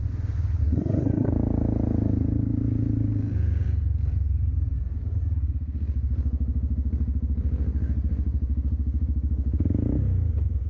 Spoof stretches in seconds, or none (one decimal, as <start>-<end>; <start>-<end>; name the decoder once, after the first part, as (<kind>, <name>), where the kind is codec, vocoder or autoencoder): 0.6-1.3 (codec, SNAC)